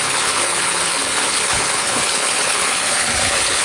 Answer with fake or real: fake